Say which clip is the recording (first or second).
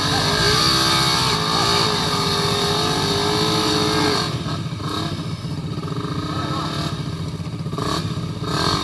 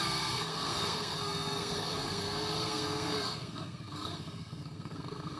first